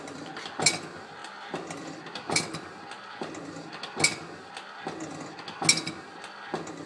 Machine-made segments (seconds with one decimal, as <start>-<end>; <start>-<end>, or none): none